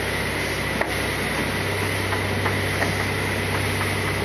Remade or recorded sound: recorded